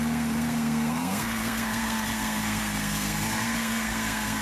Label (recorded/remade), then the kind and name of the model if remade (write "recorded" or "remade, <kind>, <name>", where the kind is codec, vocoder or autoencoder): remade, codec, SNAC